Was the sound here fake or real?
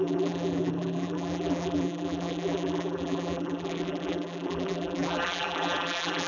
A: fake